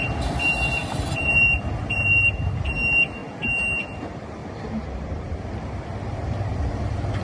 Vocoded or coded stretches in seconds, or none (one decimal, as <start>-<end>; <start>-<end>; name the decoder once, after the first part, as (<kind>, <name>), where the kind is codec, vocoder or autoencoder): 0.8-1.6 (vocoder, BigVGAN v2)